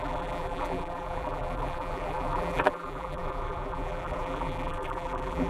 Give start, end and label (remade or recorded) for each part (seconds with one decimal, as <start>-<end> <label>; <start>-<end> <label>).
0.0-5.5 remade